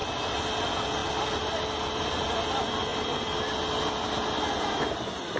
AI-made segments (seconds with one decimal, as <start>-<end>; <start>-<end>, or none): 0.0-1.0; 2.5-2.9